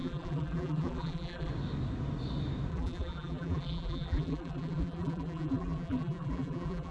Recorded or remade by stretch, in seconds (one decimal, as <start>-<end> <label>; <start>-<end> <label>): 0.0-1.5 remade; 1.5-2.7 recorded; 2.7-6.9 remade